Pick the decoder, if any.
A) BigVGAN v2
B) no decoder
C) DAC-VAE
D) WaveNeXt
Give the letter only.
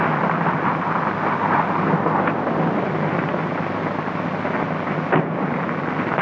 B